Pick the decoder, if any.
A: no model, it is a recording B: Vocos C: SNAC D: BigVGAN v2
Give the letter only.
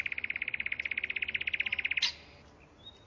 A